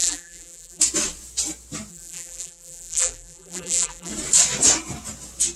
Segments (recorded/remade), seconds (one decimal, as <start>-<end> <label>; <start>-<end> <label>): 0.0-0.8 remade; 0.8-1.9 recorded; 1.9-4.1 remade; 4.1-5.6 recorded